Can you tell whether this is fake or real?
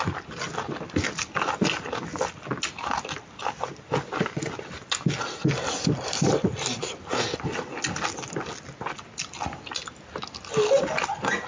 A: real